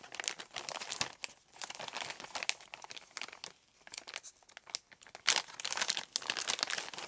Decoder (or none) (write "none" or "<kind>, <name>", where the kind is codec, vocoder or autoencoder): none